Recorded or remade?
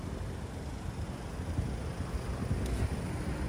recorded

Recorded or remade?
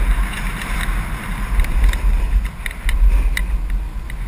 recorded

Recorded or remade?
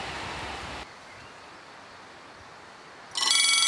recorded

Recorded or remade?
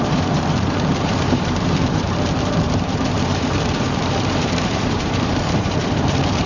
remade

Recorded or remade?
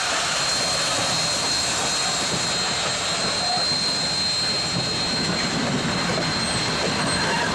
recorded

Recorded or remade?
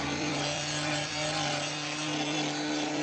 remade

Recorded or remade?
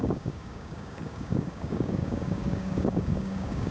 remade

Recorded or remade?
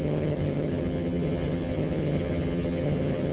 remade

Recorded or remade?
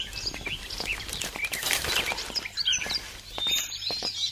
remade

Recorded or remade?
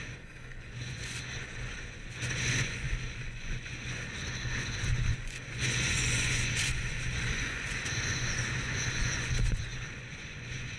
remade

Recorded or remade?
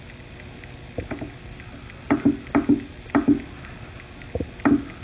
recorded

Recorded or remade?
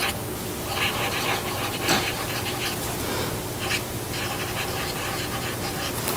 recorded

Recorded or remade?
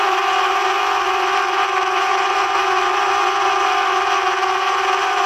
remade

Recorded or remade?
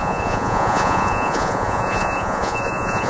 remade